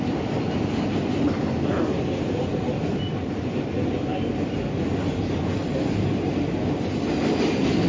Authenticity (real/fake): real